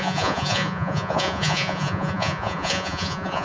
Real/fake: fake